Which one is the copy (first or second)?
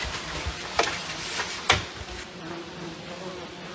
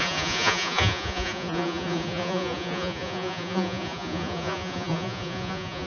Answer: second